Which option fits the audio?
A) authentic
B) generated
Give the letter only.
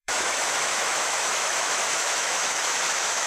B